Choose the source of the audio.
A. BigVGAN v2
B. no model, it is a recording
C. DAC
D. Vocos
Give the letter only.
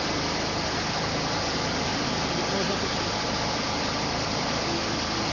B